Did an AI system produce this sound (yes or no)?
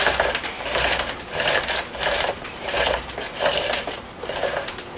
no